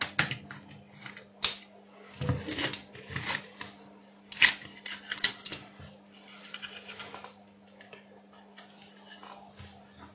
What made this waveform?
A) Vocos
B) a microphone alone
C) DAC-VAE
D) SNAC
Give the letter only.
B